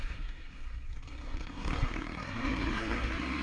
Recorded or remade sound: remade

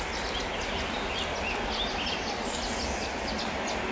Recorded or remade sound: recorded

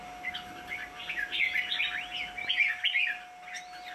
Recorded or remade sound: recorded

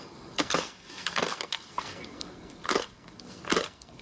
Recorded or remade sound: remade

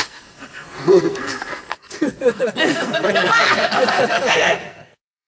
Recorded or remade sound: remade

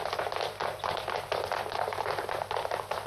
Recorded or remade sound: recorded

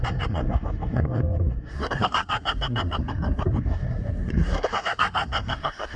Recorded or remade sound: remade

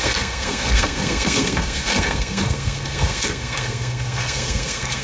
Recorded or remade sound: remade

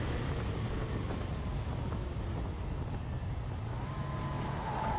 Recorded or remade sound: recorded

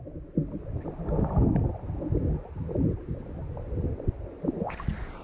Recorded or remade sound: recorded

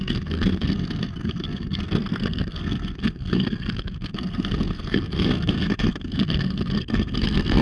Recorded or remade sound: remade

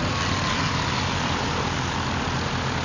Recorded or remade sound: recorded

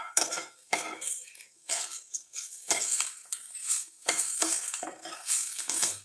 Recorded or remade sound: remade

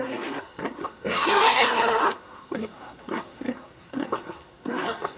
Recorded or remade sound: remade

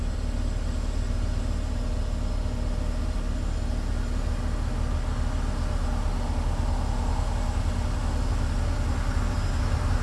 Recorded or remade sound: recorded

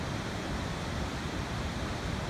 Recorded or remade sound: recorded